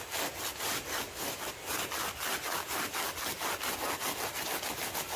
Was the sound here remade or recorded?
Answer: recorded